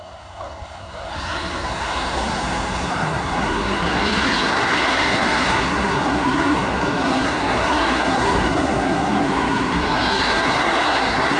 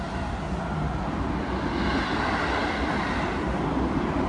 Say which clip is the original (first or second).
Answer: second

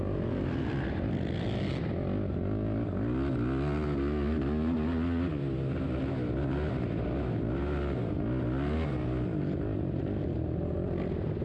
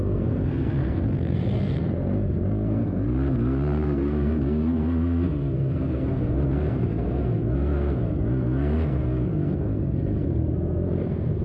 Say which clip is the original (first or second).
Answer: first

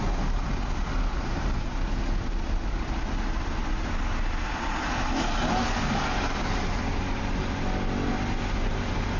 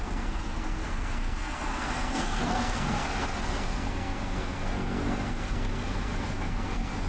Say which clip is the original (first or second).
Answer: first